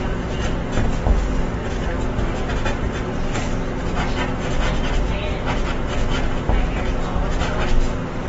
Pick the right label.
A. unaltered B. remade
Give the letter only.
A